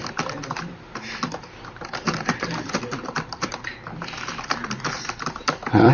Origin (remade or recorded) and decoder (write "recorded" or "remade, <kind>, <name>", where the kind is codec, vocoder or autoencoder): remade, vocoder, BigVGAN v2